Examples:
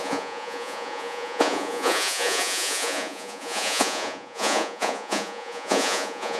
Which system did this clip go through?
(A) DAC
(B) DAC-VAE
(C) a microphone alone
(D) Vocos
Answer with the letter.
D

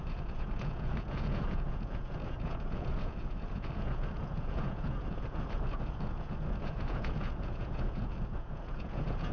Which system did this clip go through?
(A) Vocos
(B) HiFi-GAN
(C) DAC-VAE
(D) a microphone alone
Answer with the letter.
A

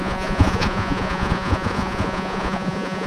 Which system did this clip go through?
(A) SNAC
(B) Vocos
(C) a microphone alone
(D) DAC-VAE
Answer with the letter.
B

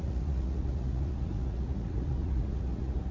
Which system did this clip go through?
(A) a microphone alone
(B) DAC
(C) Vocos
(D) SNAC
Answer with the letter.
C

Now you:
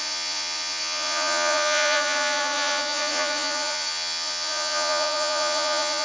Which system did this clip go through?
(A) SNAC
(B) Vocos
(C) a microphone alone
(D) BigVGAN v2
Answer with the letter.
B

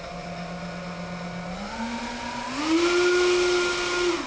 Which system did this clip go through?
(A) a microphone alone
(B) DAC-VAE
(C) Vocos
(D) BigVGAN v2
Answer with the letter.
A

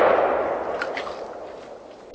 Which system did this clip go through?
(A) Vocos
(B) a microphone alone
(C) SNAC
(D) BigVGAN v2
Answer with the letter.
B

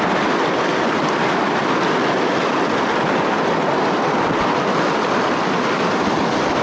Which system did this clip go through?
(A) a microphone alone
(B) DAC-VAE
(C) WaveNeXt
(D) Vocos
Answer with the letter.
A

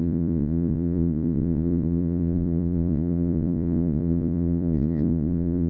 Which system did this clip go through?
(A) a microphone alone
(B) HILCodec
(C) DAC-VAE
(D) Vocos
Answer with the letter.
D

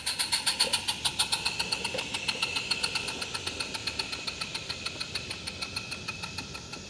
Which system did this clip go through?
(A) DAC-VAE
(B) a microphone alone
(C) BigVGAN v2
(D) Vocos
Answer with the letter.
B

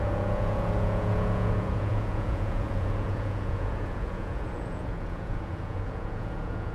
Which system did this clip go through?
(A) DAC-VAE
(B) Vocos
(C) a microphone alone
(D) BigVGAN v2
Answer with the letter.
B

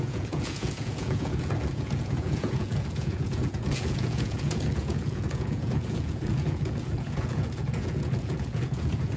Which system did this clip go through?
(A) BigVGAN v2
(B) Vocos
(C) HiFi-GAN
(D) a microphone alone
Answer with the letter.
B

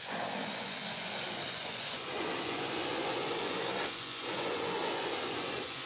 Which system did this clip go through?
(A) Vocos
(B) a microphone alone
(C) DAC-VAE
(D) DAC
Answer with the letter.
A